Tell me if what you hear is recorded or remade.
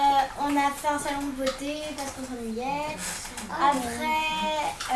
recorded